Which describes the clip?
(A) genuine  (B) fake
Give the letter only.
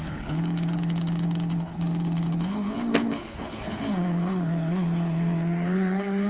B